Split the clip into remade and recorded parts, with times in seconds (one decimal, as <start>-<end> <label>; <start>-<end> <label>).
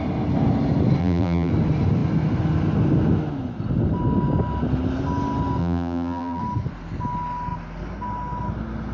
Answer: 0.0-1.0 recorded; 1.0-1.5 remade; 1.5-5.6 recorded; 5.6-6.4 remade; 6.4-8.9 recorded